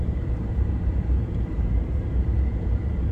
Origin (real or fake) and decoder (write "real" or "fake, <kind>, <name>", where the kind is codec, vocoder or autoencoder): fake, vocoder, BigVGAN v2